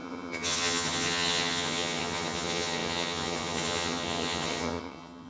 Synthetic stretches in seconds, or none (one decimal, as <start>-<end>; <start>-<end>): 0.0-5.3